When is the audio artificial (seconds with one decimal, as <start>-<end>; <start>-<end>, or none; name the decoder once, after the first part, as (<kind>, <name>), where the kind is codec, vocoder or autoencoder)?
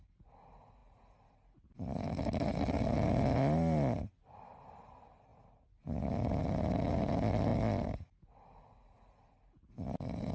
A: none